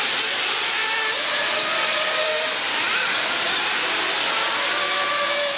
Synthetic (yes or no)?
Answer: no